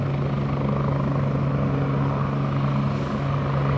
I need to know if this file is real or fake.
real